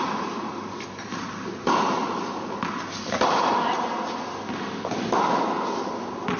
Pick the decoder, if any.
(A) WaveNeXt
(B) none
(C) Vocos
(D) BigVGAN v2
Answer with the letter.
B